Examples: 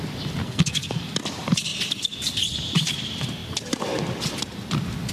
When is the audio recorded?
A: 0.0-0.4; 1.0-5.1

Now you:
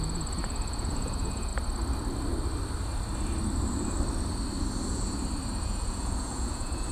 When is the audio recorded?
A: 1.5-5.6

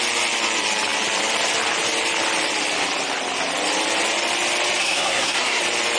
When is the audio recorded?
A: 0.0-4.8; 5.6-6.0

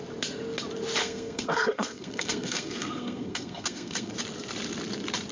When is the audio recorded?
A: 0.0-1.0; 4.1-5.3